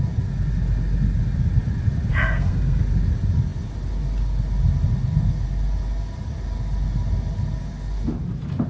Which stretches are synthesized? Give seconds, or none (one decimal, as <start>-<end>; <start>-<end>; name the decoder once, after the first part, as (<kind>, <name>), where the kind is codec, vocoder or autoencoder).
2.1-2.8 (codec, SNAC)

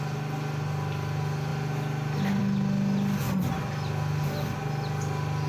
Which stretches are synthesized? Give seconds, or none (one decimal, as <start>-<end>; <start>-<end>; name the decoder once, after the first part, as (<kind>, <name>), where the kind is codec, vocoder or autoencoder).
none